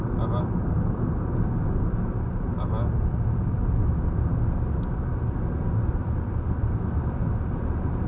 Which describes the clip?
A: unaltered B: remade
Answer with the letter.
A